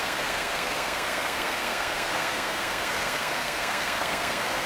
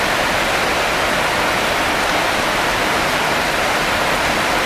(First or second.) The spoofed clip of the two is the first